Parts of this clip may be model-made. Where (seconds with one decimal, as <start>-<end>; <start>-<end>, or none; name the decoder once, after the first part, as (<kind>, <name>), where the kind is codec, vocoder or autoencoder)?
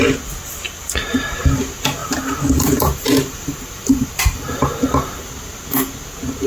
2.0-5.3 (vocoder, BigVGAN v2)